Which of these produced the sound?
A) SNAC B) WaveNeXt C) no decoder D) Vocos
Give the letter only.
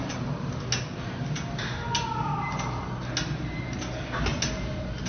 C